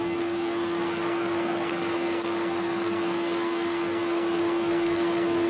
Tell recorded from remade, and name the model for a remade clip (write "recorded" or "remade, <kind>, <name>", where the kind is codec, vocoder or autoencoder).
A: remade, codec, SNAC